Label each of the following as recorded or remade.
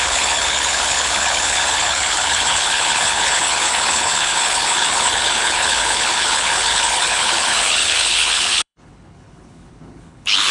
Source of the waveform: remade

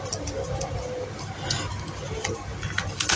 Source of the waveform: recorded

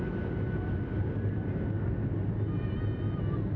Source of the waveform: recorded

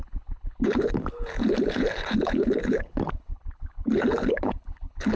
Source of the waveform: remade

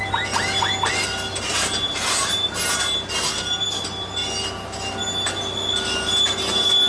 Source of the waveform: recorded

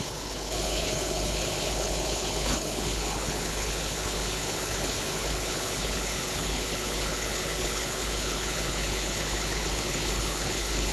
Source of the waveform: remade